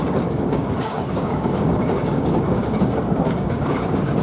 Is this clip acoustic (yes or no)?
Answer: no